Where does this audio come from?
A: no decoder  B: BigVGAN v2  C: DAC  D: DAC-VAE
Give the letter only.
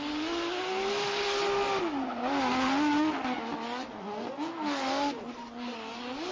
A